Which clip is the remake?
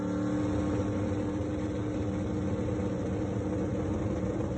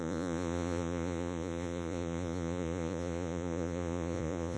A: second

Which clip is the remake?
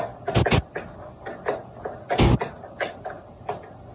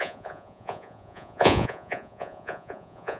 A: second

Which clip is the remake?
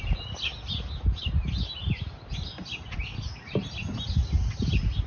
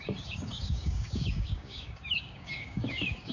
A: second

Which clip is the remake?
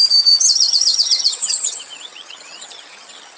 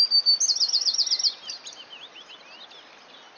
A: first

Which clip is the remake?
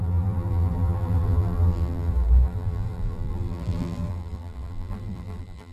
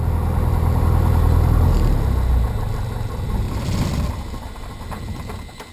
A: first